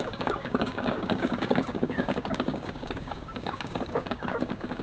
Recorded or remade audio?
remade